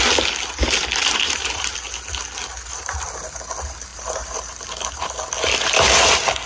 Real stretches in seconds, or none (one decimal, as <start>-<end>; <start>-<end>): 0.0-1.0; 1.7-3.9; 5.1-6.5